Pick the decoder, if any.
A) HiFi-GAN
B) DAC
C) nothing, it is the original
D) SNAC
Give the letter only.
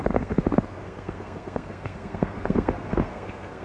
D